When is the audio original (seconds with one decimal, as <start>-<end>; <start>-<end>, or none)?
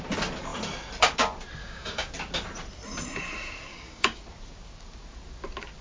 0.0-1.6; 2.1-3.7; 4.2-5.8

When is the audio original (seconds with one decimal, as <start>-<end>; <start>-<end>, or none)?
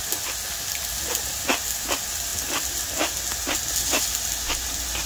0.0-5.1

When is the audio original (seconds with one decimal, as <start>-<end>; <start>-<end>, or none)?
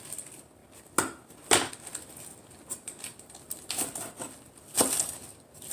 0.0-5.7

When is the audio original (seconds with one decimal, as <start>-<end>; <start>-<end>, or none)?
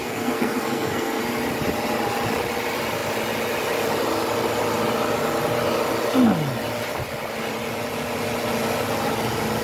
1.2-9.6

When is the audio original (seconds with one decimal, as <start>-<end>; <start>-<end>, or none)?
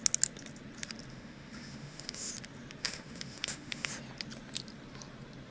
0.0-1.1; 2.3-2.8; 3.9-5.5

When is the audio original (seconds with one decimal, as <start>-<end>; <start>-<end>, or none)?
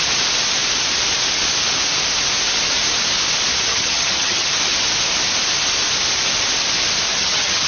0.0-3.7; 4.5-7.2